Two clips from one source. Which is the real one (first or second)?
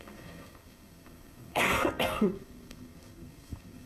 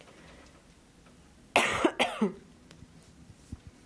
second